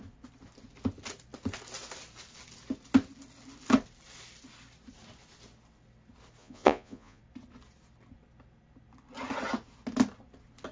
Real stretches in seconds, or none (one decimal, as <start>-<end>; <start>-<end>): 0.0-6.4; 7.2-10.7